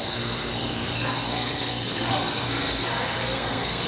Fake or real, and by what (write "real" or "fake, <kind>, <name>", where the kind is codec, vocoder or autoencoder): fake, codec, SNAC